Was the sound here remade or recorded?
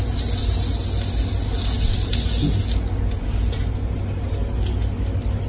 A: recorded